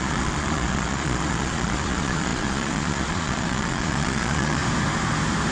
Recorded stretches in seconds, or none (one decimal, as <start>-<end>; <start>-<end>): 4.6-5.5